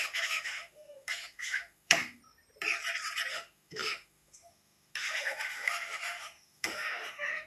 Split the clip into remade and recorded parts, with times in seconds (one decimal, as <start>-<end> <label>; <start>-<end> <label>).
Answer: 0.0-2.2 remade; 2.2-3.3 recorded; 3.3-7.5 remade